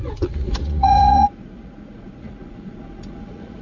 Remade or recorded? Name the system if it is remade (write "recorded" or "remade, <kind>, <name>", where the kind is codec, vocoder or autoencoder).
remade, vocoder, Vocos